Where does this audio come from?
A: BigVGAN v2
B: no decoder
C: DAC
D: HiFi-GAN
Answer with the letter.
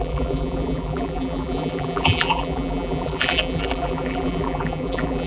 A